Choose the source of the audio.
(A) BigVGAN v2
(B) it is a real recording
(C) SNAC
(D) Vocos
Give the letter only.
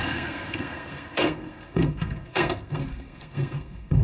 C